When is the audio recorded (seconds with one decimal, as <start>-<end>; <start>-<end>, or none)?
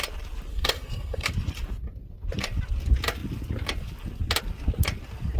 0.0-0.5; 1.3-5.4